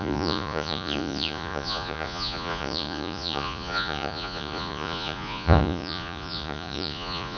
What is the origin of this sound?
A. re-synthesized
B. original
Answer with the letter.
A